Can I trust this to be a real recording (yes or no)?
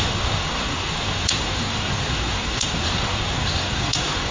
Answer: no